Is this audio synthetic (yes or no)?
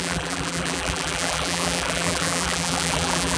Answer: yes